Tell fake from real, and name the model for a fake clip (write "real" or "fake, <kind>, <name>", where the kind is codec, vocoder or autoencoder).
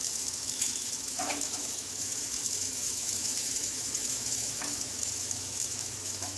fake, autoencoder, DAC-VAE